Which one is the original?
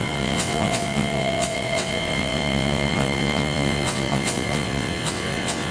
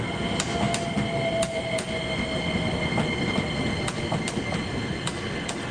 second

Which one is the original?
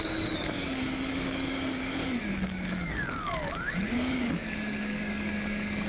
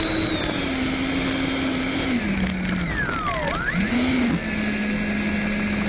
second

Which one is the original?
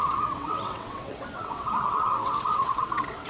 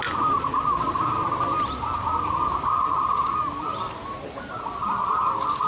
second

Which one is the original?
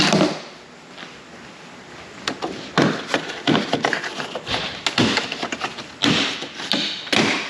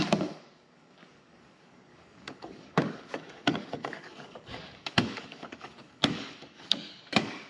first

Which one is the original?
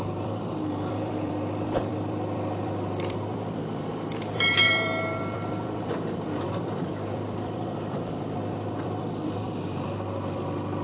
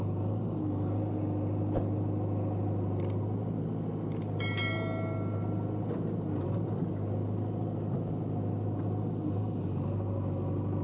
second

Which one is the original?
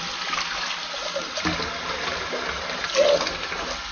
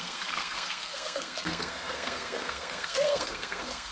first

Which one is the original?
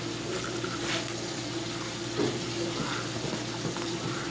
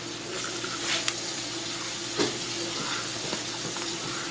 second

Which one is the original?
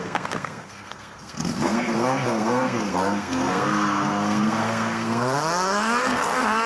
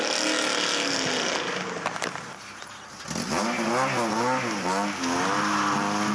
second